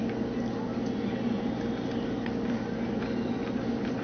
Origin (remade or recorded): recorded